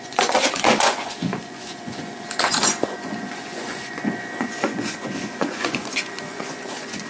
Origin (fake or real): fake